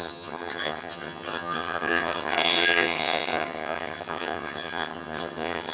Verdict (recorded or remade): remade